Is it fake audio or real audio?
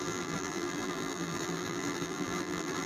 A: fake